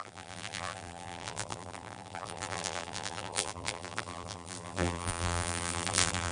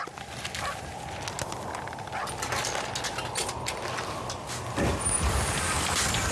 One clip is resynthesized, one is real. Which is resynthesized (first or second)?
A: first